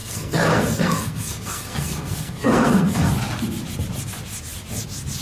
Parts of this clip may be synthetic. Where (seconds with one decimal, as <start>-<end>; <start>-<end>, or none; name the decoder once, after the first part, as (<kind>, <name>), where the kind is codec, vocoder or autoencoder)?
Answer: 0.0-3.1 (codec, SNAC)